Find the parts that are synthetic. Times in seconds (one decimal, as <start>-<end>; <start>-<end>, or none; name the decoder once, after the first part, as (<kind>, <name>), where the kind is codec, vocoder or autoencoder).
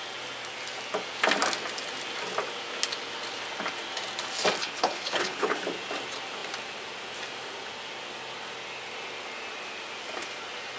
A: 4.6-5.6 (codec, HILCodec)